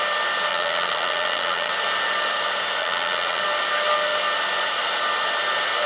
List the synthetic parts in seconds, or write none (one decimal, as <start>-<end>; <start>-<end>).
0.5-1.7; 2.8-3.4